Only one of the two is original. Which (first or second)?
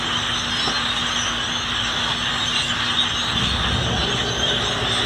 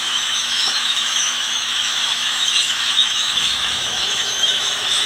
first